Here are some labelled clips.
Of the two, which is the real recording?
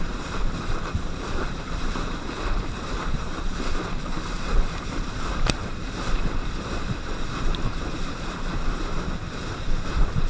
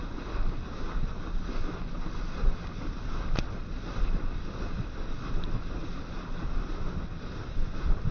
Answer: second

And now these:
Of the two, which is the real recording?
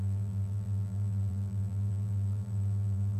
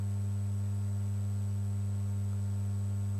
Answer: second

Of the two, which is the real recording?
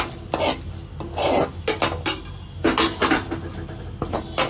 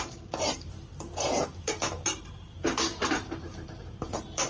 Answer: first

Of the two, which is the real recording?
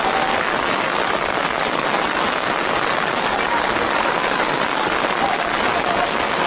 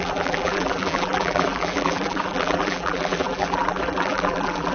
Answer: first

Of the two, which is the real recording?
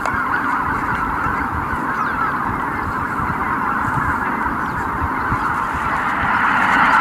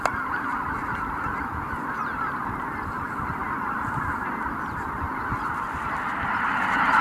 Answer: second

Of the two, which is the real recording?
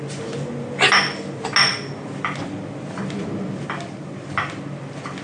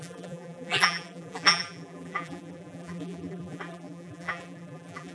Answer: first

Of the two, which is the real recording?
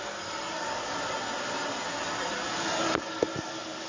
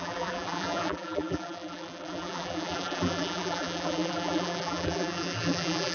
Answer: first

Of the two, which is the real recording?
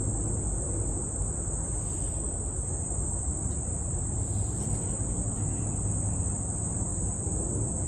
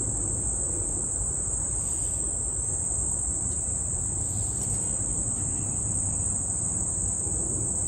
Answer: first